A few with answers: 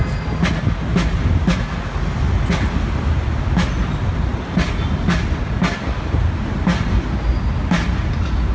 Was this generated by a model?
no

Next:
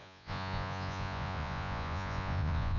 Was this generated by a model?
yes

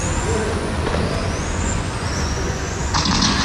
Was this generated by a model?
yes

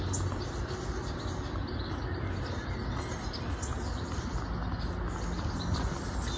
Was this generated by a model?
no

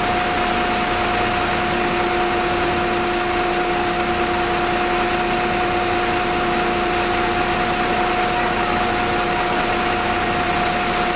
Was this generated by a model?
no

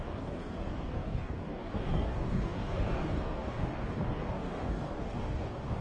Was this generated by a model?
yes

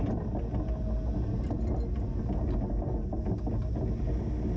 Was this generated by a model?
no